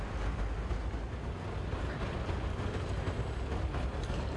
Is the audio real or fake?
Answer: real